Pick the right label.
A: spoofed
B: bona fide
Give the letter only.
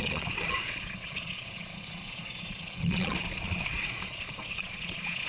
A